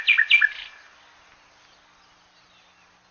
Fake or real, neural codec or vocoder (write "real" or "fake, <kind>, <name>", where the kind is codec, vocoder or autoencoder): real